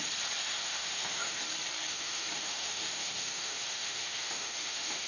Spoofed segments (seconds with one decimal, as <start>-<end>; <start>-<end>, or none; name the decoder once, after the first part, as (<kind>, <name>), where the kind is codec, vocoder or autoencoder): 0.4-1.4 (autoencoder, DAC-VAE); 1.9-5.1